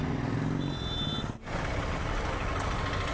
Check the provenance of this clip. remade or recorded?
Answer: recorded